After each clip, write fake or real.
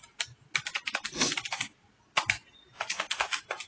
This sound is real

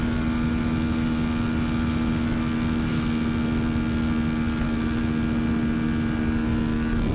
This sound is real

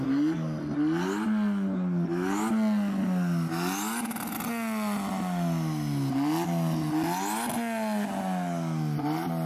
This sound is real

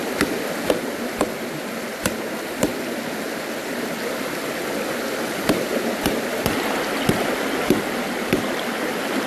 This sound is real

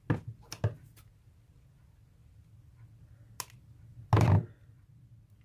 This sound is real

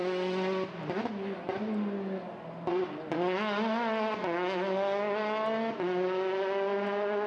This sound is real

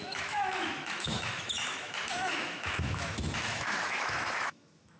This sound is fake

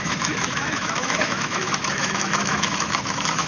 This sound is fake